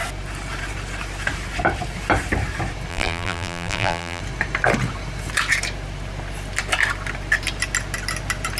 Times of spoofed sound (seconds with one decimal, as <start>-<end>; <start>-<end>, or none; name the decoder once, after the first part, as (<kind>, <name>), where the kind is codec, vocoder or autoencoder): 2.9-4.2 (vocoder, BigVGAN v2)

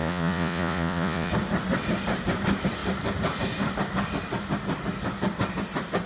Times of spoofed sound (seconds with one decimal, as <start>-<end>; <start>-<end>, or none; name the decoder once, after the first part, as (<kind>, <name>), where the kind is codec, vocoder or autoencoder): 0.0-1.3 (vocoder, Vocos)